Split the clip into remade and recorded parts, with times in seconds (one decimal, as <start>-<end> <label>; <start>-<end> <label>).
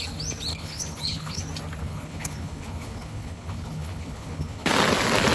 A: 0.0-0.5 recorded; 0.5-1.4 remade; 1.4-1.8 recorded; 1.8-4.7 remade; 4.7-5.3 recorded